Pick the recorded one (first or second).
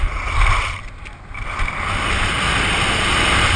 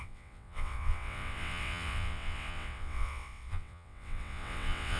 first